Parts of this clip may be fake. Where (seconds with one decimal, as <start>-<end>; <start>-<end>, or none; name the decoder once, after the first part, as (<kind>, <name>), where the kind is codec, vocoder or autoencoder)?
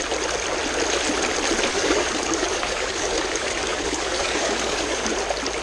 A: 1.7-5.1 (codec, DAC)